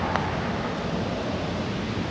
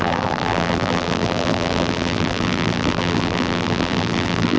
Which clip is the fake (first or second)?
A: second